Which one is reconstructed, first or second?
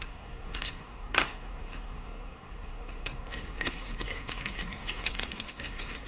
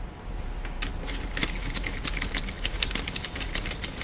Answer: first